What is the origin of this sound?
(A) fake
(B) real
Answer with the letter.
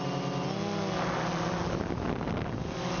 B